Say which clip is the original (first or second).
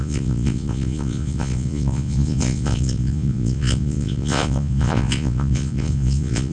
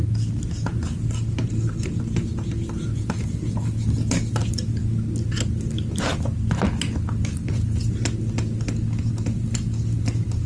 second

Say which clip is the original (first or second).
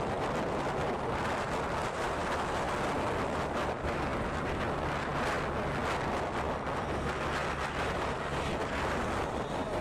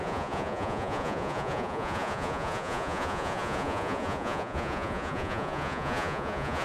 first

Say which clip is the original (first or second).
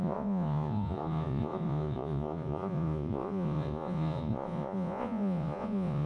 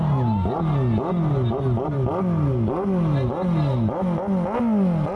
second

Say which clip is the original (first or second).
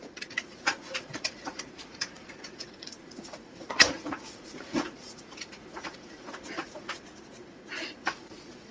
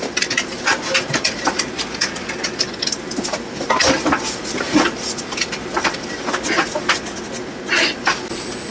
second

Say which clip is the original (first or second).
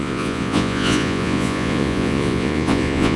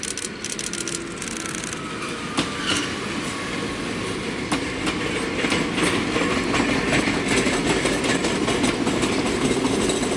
second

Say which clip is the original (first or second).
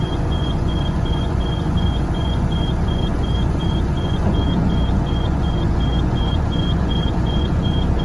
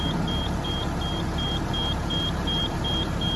second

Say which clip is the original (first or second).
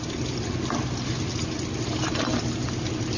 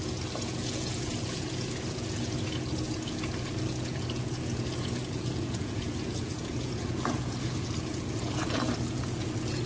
first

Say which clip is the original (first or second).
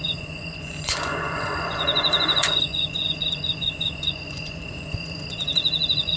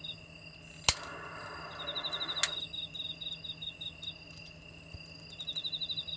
second